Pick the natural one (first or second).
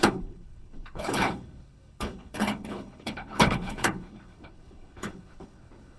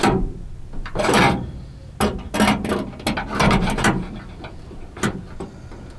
second